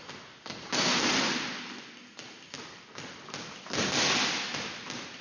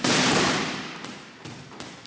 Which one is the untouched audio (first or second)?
first